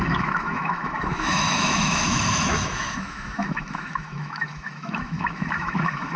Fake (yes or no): yes